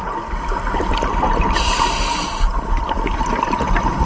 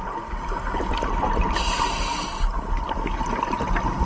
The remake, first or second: first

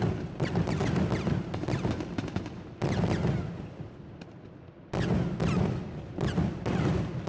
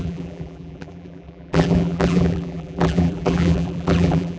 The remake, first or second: second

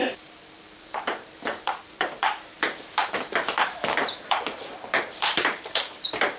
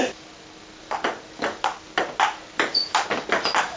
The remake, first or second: first